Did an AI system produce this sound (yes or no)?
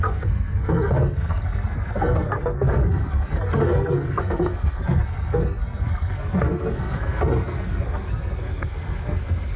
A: yes